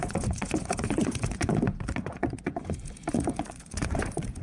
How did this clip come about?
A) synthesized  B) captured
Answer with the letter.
A